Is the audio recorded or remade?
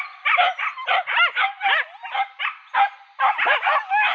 recorded